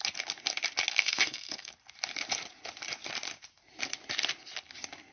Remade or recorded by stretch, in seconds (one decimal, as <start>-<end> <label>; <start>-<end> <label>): 0.0-0.9 recorded; 0.9-1.7 remade; 1.7-5.1 recorded